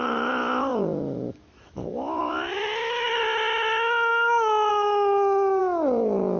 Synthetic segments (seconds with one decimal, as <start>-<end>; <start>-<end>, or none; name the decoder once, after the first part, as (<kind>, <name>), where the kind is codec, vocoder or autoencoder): 0.7-3.2 (autoencoder, DAC-VAE); 5.6-6.4